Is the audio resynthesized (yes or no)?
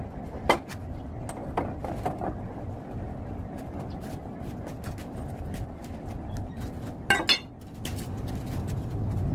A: no